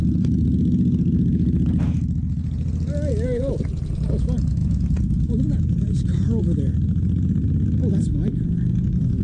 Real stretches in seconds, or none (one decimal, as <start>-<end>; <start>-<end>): 0.0-9.2